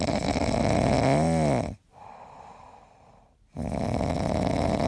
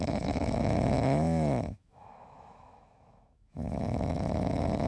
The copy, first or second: second